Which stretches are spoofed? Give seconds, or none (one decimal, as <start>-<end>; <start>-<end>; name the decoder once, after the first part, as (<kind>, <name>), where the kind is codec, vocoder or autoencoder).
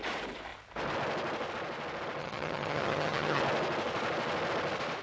2.2-3.4 (vocoder, HiFi-GAN)